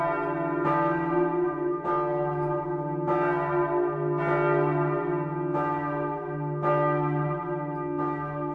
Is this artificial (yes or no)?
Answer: no